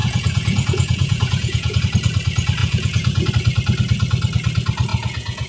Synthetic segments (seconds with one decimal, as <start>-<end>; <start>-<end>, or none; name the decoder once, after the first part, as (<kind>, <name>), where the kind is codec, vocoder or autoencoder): 0.0-1.8 (vocoder, Vocos); 2.6-3.3; 4.9-5.5